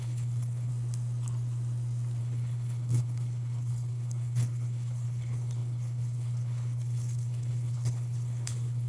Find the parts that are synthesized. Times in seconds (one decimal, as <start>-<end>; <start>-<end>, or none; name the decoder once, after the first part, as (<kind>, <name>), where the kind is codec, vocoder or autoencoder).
0.0-0.7 (codec, HILCodec); 2.2-8.9